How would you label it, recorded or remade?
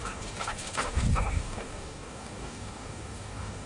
remade